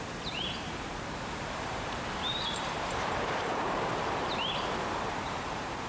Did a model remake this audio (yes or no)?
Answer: yes